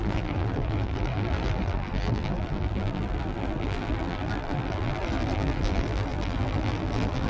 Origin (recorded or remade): remade